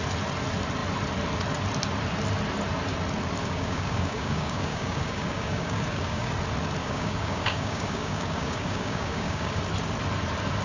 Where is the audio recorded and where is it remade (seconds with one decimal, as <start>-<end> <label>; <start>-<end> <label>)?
0.0-3.4 recorded; 3.4-6.3 remade; 6.3-6.8 recorded; 6.8-9.6 remade; 9.6-10.6 recorded